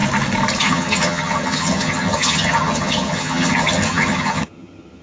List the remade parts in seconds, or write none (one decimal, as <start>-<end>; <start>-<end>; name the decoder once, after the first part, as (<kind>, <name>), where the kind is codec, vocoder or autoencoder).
0.6-5.0 (vocoder, HiFi-GAN)